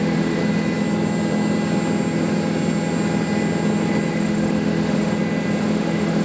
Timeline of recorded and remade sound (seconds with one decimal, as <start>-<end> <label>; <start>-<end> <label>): 0.0-0.4 remade; 0.4-4.1 recorded; 4.1-5.1 remade; 5.1-5.7 recorded; 5.7-6.2 remade